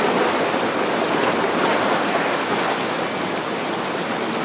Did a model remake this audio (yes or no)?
no